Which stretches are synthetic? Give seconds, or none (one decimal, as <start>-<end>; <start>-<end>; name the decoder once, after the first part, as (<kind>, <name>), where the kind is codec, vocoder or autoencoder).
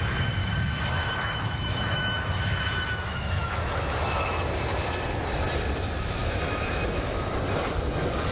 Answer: 0.4-4.3 (autoencoder, DAC-VAE); 6.2-7.3